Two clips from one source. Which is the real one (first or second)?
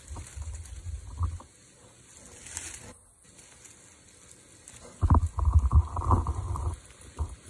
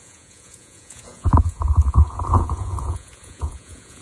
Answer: first